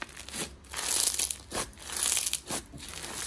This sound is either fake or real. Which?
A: real